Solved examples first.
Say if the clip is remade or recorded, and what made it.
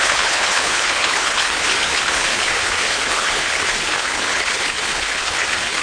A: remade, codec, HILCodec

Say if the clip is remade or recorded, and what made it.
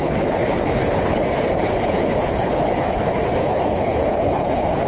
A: remade, codec, HILCodec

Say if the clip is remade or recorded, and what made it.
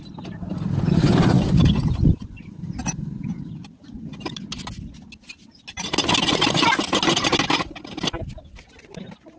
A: recorded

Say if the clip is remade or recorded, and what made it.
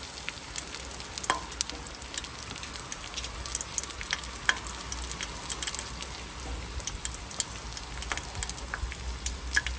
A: recorded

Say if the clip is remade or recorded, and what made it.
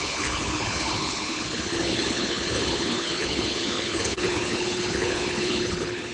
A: remade, codec, HILCodec